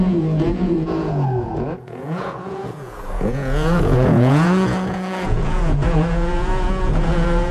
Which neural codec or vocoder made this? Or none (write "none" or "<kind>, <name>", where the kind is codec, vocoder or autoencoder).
vocoder, Vocos